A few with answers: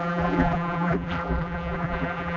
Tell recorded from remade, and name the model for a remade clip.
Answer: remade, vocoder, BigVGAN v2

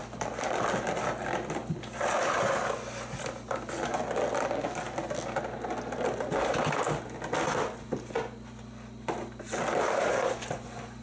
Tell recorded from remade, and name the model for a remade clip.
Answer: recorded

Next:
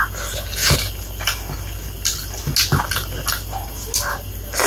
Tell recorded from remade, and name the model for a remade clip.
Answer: recorded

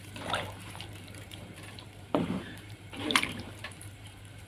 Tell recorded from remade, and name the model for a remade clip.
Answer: remade, vocoder, BigVGAN v2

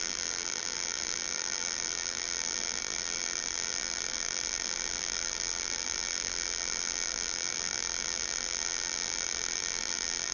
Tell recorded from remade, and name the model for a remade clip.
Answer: remade, vocoder, BigVGAN v2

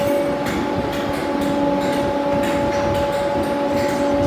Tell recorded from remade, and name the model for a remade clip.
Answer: recorded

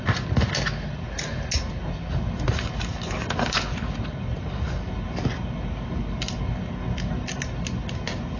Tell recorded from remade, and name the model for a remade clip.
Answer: recorded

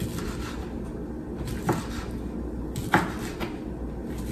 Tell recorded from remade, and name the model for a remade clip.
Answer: recorded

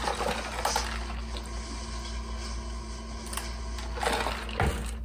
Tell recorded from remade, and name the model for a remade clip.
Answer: recorded